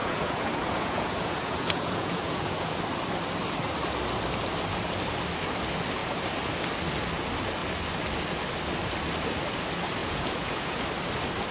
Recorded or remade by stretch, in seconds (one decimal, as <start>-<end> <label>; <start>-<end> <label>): 0.0-2.8 remade; 2.8-10.0 recorded; 10.0-10.8 remade; 10.8-11.5 recorded